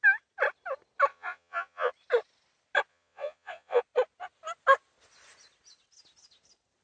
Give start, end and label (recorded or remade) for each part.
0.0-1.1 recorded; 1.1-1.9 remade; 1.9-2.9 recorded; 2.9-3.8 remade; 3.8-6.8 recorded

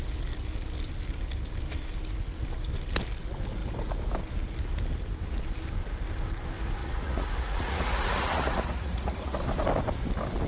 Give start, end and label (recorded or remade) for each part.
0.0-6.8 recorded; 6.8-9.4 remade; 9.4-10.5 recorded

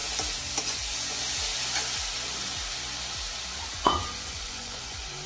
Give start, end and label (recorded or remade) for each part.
0.0-0.6 recorded; 0.6-1.2 remade; 1.2-3.7 recorded; 3.7-5.3 remade

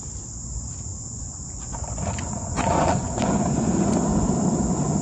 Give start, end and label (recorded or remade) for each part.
0.0-0.9 recorded; 0.9-3.9 remade; 3.9-5.0 recorded

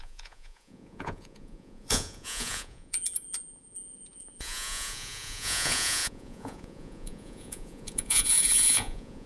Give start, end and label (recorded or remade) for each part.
0.0-9.3 remade

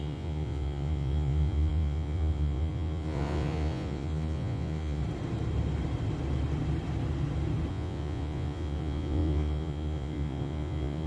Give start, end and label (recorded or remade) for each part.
0.0-5.0 remade; 5.0-7.7 recorded; 7.7-11.1 remade

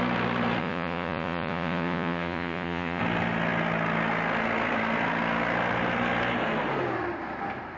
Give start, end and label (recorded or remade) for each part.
0.0-0.6 recorded; 0.6-3.0 remade; 3.0-7.8 recorded

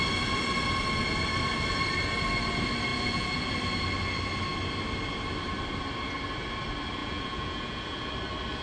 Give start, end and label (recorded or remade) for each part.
0.0-2.9 recorded; 2.9-3.5 remade; 3.5-7.0 recorded; 7.0-8.1 remade; 8.1-8.6 recorded